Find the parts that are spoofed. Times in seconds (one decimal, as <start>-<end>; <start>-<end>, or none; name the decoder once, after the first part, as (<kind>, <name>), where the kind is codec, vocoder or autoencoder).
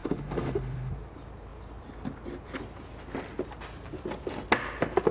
0.0-0.9 (autoencoder, DAC-VAE)